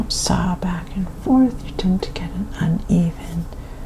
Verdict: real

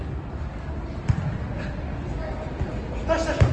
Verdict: fake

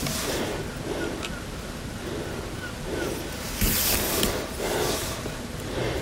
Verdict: real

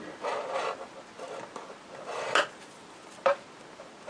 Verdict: real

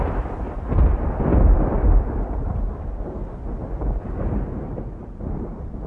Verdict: fake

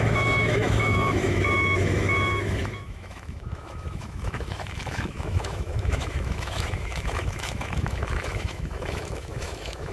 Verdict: fake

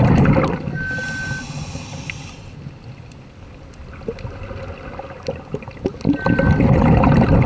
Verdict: real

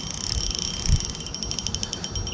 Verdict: real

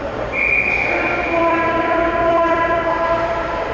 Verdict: fake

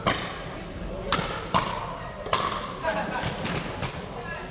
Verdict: real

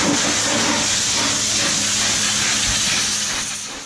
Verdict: real